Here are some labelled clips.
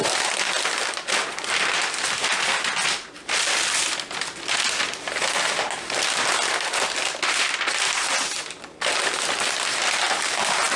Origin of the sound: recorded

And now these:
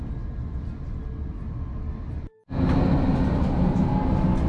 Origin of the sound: recorded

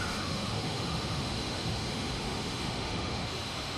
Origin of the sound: remade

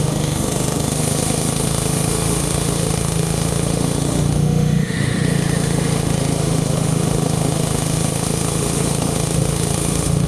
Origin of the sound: remade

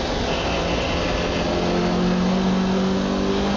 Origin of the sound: recorded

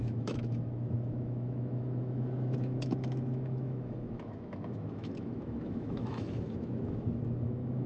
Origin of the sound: remade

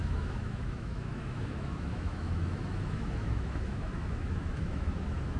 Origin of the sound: remade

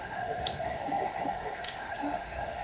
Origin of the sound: remade